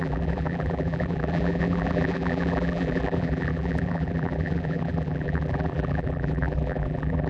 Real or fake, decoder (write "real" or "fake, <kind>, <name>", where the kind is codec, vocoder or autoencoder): fake, vocoder, BigVGAN v2